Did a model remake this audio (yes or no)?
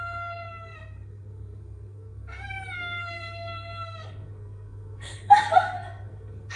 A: yes